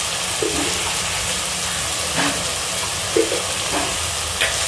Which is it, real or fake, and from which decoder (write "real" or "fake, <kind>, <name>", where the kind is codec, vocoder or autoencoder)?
real